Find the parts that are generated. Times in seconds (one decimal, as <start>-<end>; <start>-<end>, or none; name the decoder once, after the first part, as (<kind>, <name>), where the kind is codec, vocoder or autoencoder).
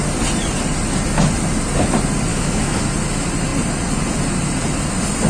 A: 2.3-2.8 (autoencoder, DAC-VAE)